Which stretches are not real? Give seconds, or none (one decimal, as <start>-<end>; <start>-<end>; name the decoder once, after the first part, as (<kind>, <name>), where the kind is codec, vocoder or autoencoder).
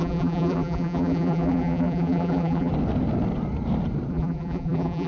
0.0-2.7 (vocoder, BigVGAN v2); 4.1-5.1